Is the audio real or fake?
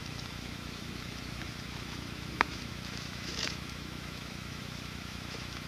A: fake